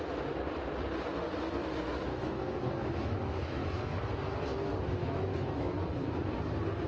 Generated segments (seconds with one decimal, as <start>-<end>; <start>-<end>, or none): 1.6-4.0; 5.0-5.6